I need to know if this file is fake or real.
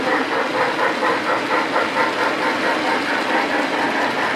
real